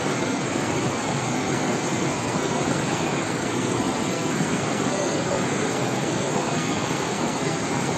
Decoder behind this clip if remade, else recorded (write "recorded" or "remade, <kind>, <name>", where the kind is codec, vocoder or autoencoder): remade, codec, SNAC